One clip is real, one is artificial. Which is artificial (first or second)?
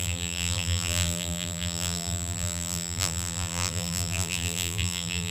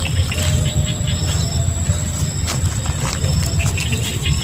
first